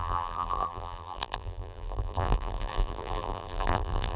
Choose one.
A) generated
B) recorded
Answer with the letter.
A